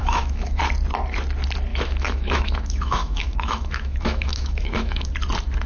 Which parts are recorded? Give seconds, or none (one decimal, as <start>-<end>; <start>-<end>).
0.6-1.7; 5.1-5.7